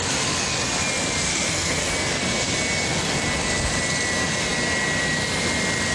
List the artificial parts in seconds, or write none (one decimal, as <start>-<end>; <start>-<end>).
0.0-0.5; 1.3-1.9